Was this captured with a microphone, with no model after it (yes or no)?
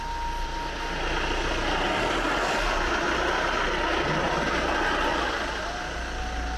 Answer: yes